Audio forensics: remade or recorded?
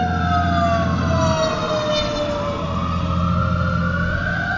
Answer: recorded